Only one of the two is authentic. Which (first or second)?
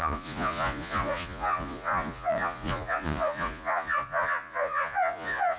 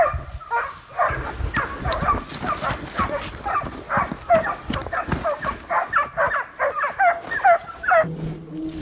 second